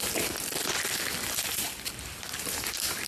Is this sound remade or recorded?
recorded